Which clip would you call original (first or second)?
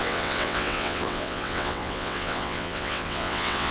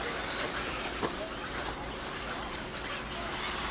second